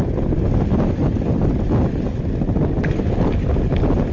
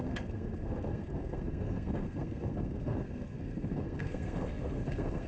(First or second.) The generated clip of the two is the second